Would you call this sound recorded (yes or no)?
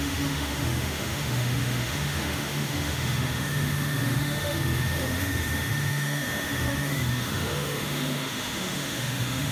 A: no